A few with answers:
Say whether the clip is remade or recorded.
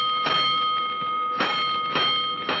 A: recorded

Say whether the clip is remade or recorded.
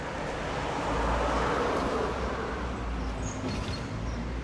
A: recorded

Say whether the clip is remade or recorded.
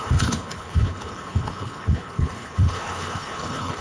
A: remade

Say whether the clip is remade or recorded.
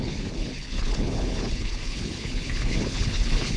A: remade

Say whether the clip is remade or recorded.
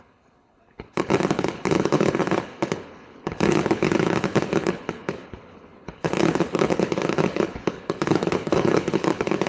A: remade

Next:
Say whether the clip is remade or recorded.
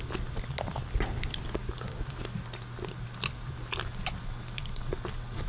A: recorded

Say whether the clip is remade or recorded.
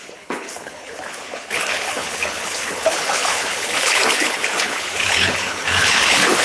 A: remade